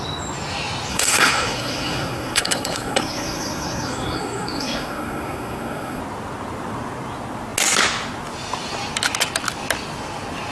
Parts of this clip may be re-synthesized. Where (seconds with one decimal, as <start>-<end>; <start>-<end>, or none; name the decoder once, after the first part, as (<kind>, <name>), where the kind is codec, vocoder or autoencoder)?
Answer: 0.9-6.0 (codec, SNAC)